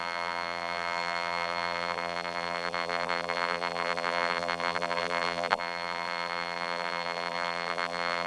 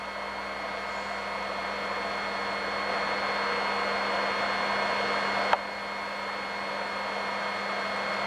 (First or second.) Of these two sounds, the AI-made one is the first